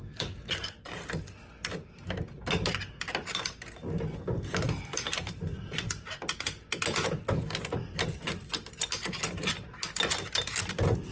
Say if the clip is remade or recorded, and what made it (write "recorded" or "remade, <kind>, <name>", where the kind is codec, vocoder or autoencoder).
recorded